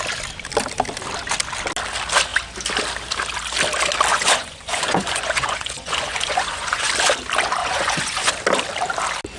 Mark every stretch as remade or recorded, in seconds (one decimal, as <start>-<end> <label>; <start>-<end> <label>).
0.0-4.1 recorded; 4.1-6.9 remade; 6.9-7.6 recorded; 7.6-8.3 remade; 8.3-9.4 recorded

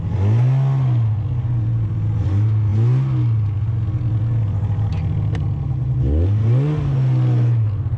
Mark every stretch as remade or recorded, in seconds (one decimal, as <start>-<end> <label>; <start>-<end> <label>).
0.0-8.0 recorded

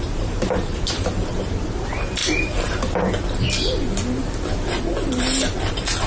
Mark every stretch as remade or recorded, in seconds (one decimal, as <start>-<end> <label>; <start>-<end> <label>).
0.0-2.2 remade; 2.2-6.1 recorded

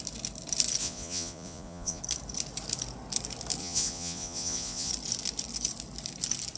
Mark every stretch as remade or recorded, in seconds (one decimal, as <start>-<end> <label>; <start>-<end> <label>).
0.0-0.8 recorded; 0.8-2.0 remade; 2.0-3.6 recorded; 3.6-4.9 remade; 4.9-6.6 recorded

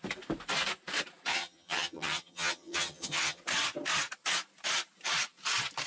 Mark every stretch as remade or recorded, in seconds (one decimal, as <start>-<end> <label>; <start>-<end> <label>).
0.0-1.3 recorded; 1.3-3.4 remade; 3.4-5.9 recorded